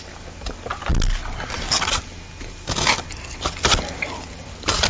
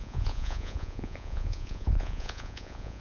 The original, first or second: first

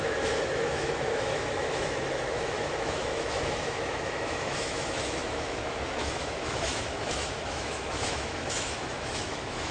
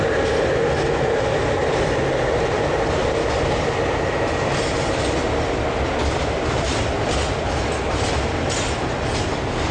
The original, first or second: second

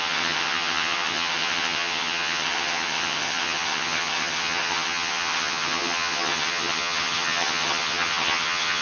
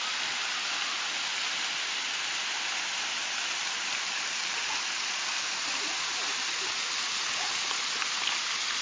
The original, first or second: second